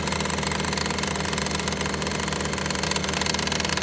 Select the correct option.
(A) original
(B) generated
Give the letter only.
A